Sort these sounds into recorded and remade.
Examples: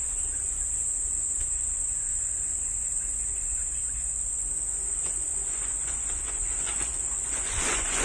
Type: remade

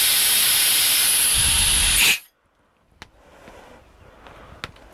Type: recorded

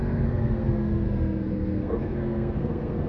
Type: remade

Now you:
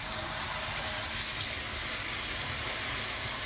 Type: recorded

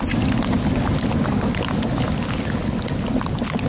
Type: recorded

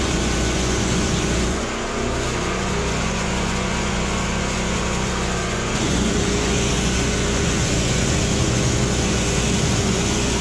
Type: remade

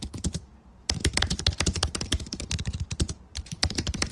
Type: remade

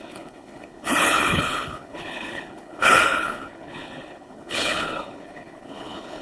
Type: remade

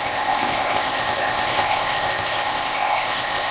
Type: remade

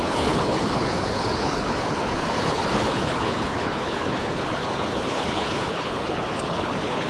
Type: remade